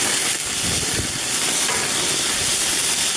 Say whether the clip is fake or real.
real